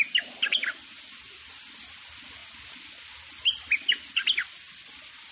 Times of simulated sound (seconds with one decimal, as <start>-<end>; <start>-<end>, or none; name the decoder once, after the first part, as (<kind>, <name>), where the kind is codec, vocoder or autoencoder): none